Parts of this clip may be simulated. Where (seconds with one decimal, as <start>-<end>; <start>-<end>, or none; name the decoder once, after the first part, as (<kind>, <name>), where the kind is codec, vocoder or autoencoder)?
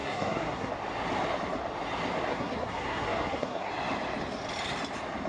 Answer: 0.0-0.7 (codec, SNAC); 2.3-3.7